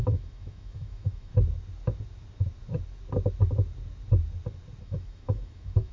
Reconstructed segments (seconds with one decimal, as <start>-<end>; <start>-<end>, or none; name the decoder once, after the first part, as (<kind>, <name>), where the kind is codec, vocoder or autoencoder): 0.0-1.3 (autoencoder, DAC-VAE); 4.8-5.9